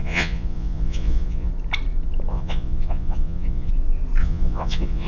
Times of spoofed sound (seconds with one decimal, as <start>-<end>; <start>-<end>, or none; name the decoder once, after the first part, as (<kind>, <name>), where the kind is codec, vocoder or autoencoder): 0.0-1.5 (vocoder, Vocos); 2.3-3.7; 4.2-5.1